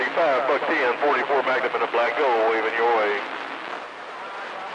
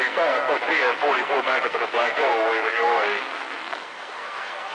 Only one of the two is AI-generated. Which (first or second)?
second